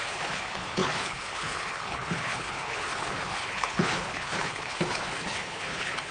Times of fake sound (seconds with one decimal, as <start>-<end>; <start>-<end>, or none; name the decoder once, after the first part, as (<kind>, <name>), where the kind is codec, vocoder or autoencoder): 0.0-6.1 (codec, HILCodec)